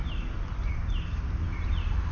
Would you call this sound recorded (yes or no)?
yes